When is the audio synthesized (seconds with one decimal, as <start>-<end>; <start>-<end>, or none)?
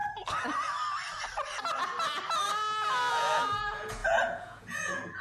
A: 3.1-5.2